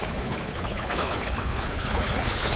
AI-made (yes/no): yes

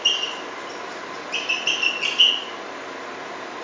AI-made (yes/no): no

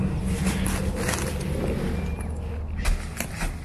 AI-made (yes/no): no